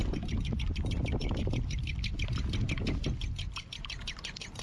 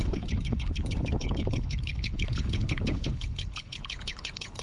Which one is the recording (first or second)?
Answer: first